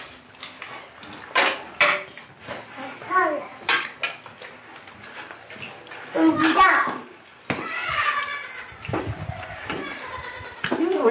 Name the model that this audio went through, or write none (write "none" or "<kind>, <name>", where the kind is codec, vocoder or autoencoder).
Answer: none